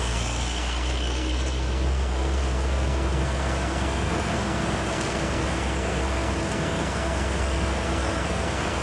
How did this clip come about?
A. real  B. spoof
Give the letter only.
B